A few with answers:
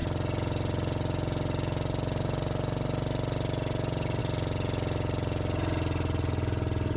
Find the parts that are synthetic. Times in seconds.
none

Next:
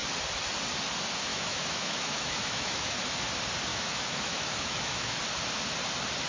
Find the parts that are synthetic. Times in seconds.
1.3-3.0 (autoencoder, DAC-VAE); 3.7-5.2